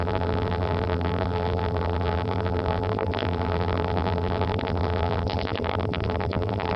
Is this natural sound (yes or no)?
no